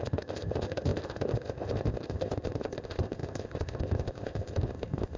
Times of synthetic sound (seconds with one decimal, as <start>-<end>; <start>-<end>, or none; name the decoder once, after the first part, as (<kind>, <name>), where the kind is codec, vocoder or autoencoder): 0.0-5.2 (codec, ZipCodec)